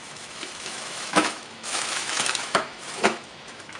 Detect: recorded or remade remade